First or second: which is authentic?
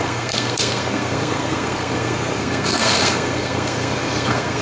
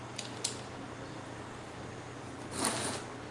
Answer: second